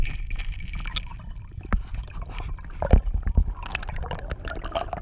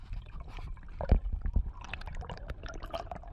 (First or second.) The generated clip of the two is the second